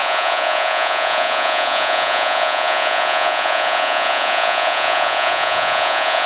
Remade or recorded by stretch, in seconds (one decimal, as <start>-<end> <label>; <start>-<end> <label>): 0.0-6.3 remade